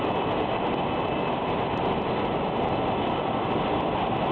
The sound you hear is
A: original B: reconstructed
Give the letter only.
A